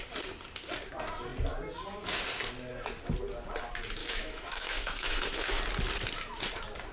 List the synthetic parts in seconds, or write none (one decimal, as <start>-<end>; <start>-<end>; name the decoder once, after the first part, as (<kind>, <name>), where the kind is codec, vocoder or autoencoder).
4.0-5.6 (autoencoder, DAC-VAE)